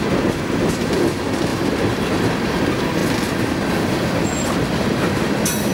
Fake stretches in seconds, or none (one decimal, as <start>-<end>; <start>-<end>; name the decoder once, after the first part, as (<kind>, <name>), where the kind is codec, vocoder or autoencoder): 1.5-2.6 (vocoder, BigVGAN v2)